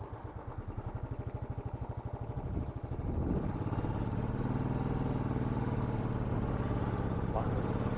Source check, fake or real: real